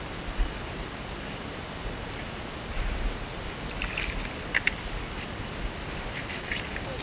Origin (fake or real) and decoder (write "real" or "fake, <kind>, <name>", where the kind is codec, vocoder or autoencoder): real